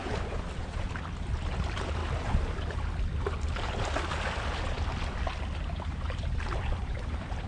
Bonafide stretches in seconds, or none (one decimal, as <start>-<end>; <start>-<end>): 0.0-0.6; 2.0-6.4